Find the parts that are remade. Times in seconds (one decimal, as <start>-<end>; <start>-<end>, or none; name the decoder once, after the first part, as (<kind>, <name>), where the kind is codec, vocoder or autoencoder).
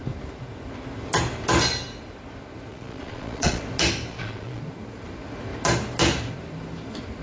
2.7-3.6 (vocoder, Vocos); 4.1-4.6